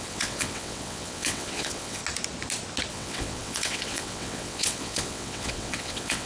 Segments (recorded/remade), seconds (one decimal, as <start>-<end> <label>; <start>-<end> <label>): 0.0-2.0 remade; 2.0-2.9 recorded; 2.9-6.3 remade